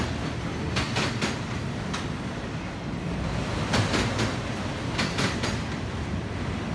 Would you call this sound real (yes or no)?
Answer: yes